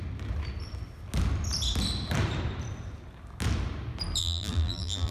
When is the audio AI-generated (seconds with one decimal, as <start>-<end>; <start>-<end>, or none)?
4.2-5.1